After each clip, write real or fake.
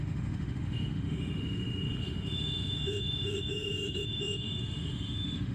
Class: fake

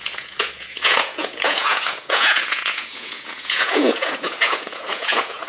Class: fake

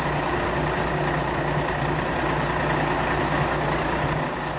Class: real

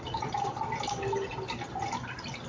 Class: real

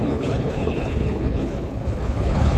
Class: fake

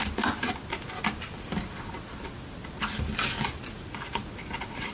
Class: real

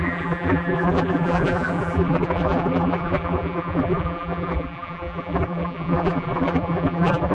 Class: fake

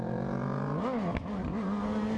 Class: real